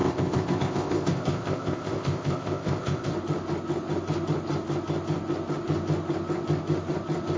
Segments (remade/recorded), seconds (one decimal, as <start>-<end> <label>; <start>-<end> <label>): 0.0-3.1 remade; 3.1-7.4 recorded